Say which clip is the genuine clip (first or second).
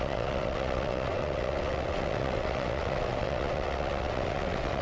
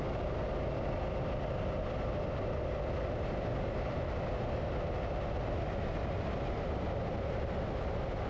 second